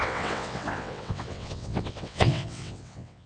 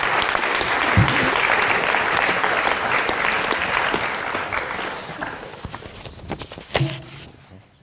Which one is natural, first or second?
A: second